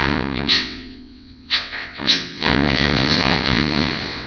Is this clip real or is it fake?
fake